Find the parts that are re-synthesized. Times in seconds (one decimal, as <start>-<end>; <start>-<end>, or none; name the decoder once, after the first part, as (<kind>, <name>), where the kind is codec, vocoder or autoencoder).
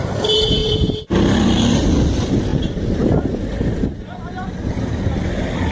none